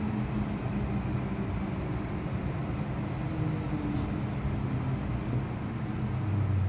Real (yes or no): yes